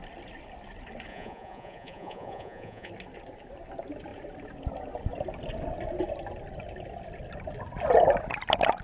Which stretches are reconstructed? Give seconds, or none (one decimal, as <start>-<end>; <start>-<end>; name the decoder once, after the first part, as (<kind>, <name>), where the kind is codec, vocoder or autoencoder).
1.1-2.9 (vocoder, Vocos)